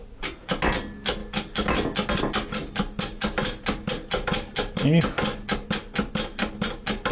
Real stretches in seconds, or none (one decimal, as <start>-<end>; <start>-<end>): 0.0-7.1